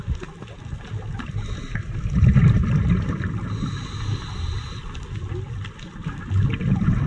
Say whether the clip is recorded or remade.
recorded